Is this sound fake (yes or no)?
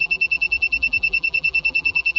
yes